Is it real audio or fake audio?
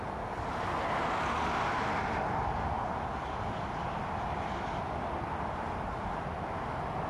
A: real